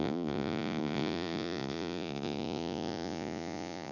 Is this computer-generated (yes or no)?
yes